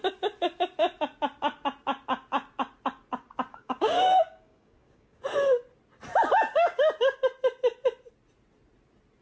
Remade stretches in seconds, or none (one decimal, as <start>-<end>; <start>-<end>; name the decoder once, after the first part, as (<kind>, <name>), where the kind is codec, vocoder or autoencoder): 3.5-5.2 (codec, DAC)